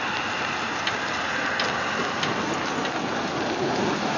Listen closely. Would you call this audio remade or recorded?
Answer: recorded